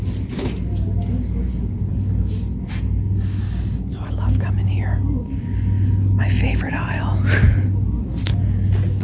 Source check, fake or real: real